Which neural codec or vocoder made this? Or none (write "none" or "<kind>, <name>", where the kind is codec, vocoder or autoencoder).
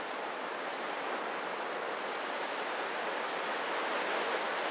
none